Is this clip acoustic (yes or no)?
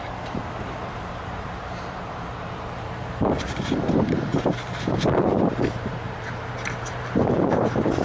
no